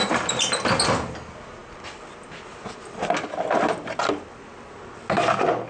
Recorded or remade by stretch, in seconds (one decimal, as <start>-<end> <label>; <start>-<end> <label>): 0.0-5.7 recorded